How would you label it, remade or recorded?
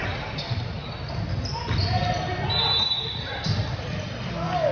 recorded